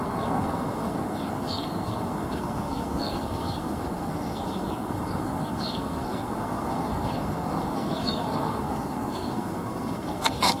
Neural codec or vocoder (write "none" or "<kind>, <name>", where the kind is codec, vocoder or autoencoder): codec, SNAC